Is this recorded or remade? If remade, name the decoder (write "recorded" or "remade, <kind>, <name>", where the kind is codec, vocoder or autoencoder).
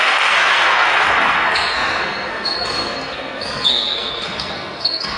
remade, codec, SNAC